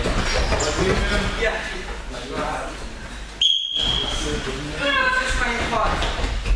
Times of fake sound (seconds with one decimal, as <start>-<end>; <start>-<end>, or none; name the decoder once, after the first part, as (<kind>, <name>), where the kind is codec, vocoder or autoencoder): none